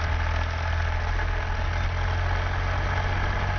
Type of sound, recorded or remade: recorded